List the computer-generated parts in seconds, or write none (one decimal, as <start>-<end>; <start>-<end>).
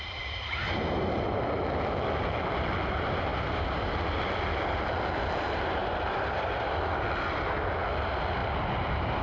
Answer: 3.3-3.9; 5.8-6.7